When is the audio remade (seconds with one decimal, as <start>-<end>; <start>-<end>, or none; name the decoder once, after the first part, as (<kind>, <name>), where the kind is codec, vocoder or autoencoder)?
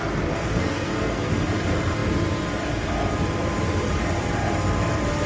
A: 0.4-1.4 (codec, SNAC)